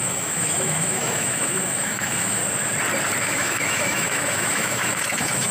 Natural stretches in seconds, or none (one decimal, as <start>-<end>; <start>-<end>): 2.4-3.2